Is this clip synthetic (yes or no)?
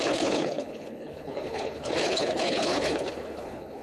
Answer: yes